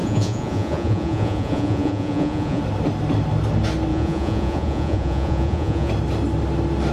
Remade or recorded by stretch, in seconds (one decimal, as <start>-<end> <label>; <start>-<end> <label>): 0.0-2.6 remade; 2.6-3.9 recorded; 3.9-5.9 remade; 5.9-6.9 recorded

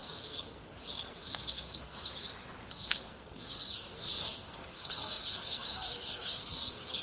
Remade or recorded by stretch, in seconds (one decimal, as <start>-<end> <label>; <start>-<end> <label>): 0.0-2.1 remade; 2.1-2.7 recorded; 2.7-7.0 remade

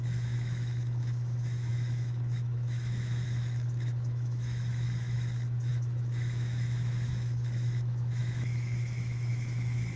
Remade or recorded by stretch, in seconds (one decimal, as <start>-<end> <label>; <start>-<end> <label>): 0.0-10.0 remade

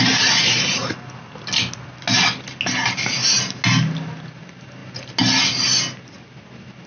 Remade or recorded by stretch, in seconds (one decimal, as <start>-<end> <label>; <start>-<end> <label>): 0.0-6.9 recorded